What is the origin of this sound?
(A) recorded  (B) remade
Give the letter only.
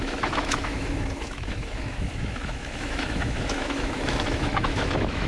B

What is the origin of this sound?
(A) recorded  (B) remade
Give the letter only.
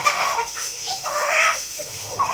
B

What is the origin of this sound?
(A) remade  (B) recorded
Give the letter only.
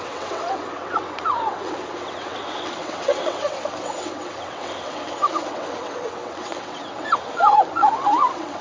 A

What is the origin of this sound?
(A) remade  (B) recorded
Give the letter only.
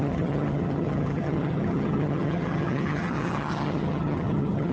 A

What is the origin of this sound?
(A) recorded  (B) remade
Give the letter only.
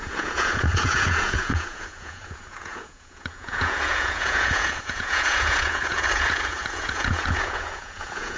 B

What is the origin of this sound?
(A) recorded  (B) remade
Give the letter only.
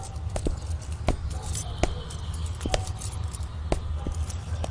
A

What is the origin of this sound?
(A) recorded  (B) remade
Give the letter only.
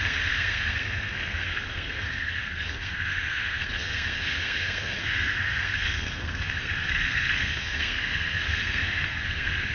B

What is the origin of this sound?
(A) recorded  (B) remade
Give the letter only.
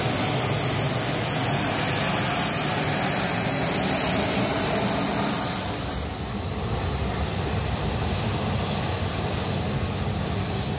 A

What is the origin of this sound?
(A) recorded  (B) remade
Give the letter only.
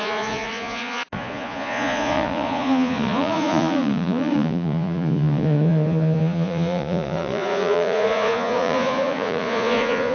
B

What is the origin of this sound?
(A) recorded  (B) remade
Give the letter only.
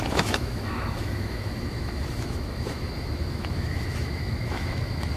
B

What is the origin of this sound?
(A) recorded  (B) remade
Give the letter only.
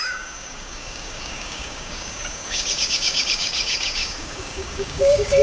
B